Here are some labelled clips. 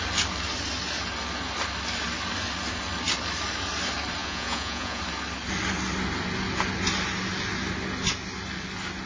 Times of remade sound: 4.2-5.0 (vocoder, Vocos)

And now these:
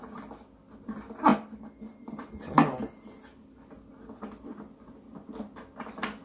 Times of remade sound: none

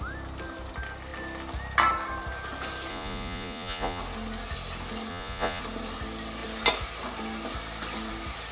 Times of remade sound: 2.9-4.0 (vocoder, Vocos); 5.1-5.6

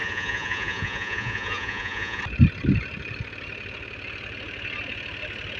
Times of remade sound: 0.0-2.2 (vocoder, Vocos)

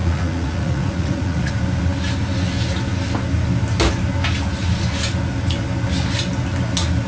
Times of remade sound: 0.0-1.5 (vocoder, Vocos)